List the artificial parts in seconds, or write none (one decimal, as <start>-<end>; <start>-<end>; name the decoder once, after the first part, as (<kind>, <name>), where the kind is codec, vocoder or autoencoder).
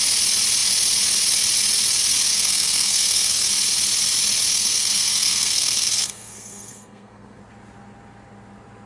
2.3-3.5 (codec, SNAC); 4.5-7.4